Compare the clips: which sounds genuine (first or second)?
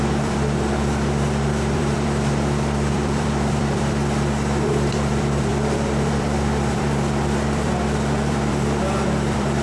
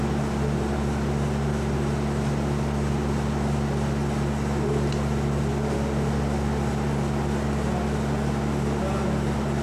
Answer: second